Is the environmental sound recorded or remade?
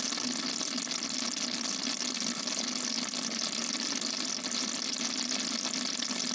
recorded